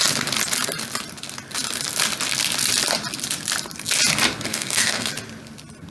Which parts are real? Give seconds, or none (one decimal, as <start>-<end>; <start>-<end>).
0.0-4.5; 5.1-5.9